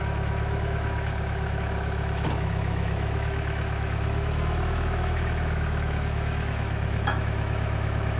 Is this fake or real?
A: fake